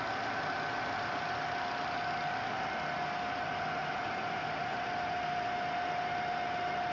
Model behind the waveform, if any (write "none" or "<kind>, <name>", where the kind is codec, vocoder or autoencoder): none